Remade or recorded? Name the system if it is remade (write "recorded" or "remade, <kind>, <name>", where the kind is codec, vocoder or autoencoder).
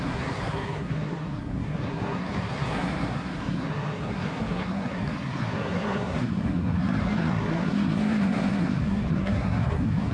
remade, codec, SNAC